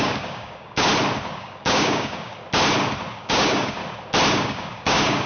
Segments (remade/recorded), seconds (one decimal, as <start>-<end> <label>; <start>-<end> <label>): 0.0-0.9 remade; 0.9-1.4 recorded; 1.4-2.4 remade; 2.4-3.1 recorded; 3.1-3.8 remade; 3.8-4.3 recorded; 4.3-5.3 remade